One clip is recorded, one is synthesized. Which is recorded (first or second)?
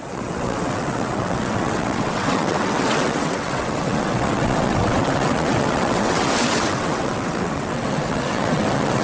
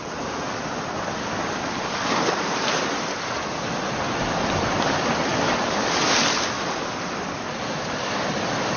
second